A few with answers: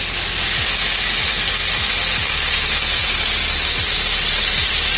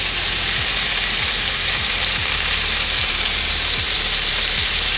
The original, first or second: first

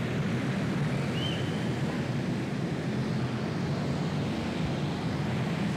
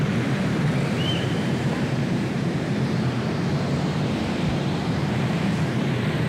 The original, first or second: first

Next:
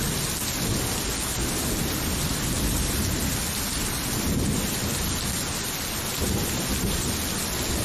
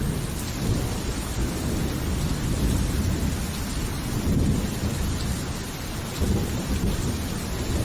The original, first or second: first